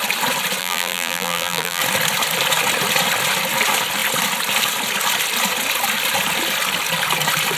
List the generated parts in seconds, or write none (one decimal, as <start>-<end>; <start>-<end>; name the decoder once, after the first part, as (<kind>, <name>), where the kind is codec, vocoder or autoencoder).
0.6-1.8 (vocoder, BigVGAN v2)